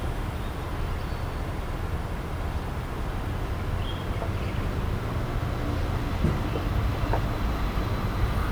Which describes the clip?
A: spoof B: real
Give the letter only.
B